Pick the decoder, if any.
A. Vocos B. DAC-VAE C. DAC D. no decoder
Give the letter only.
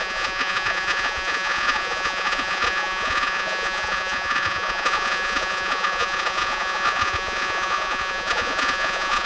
A